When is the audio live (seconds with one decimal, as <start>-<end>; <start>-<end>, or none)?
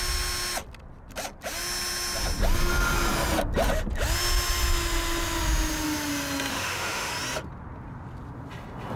0.0-6.5; 7.1-9.0